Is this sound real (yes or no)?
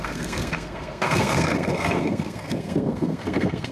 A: no